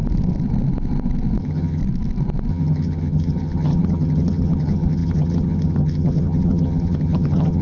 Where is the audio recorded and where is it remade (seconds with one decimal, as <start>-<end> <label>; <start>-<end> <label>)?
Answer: 0.0-1.4 recorded; 1.4-1.8 remade; 1.8-2.5 recorded; 2.5-7.6 remade